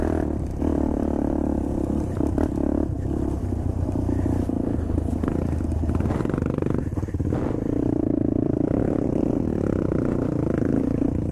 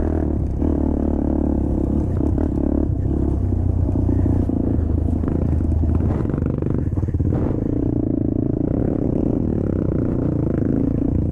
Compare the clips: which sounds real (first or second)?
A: second